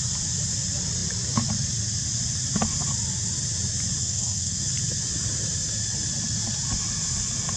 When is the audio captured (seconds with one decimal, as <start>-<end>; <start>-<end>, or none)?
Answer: 0.0-4.0; 4.6-7.6